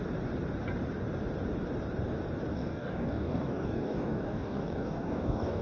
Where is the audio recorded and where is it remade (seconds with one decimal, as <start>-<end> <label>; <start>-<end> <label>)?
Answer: 0.0-2.5 recorded; 2.5-5.6 remade